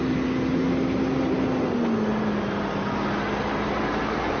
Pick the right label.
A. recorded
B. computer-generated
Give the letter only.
A